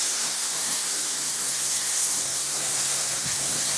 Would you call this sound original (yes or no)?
no